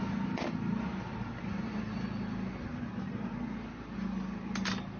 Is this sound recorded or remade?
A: recorded